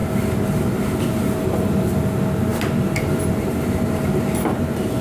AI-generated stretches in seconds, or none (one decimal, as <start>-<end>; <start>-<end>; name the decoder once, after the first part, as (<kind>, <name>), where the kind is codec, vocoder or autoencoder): none